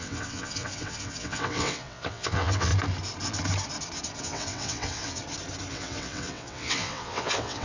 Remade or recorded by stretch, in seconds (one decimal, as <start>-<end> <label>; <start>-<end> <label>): 0.0-2.7 remade; 2.7-4.2 recorded; 4.2-5.2 remade; 5.2-5.7 recorded; 5.7-7.6 remade